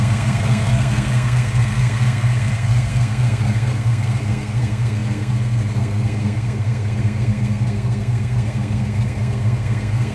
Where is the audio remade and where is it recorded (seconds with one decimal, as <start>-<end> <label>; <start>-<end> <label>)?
0.0-10.1 remade